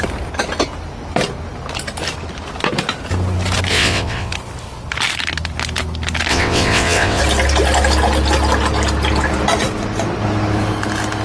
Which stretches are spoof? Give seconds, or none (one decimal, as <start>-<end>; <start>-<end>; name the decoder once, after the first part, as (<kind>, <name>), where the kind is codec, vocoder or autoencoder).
3.7-4.3 (vocoder, WaveNeXt); 6.3-7.2